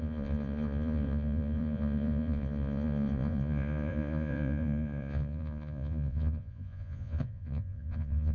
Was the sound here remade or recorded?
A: remade